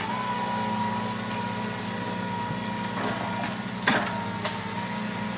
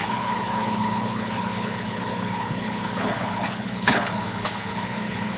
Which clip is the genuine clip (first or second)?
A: first